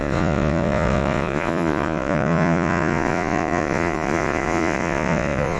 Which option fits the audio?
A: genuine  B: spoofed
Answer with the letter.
B